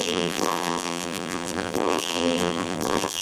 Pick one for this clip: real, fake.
fake